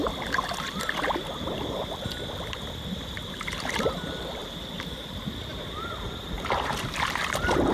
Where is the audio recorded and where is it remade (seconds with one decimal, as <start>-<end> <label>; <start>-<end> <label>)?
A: 0.0-4.4 recorded; 4.4-5.7 remade; 5.7-7.7 recorded